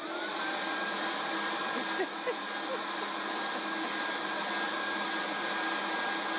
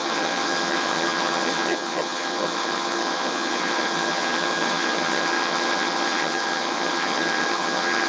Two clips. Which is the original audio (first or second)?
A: first